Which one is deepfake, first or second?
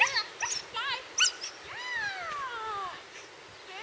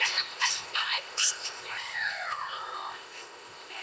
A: second